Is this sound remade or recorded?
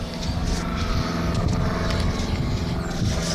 recorded